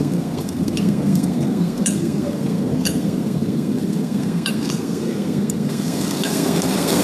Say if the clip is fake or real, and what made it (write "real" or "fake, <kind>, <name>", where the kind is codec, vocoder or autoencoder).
fake, codec, SNAC